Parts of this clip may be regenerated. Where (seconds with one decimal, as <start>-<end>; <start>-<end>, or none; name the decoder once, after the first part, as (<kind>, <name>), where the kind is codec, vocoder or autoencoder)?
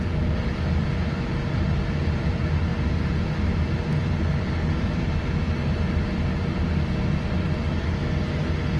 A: none